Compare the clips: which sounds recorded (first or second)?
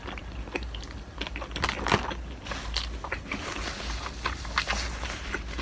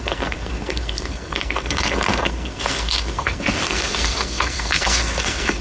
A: first